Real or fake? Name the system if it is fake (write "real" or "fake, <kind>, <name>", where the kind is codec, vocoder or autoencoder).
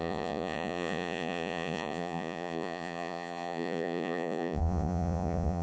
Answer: fake, vocoder, Vocos